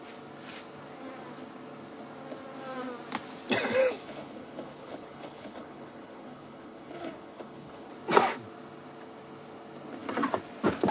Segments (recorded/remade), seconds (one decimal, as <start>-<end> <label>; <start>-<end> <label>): 0.0-3.8 recorded; 3.8-7.9 remade; 7.9-10.9 recorded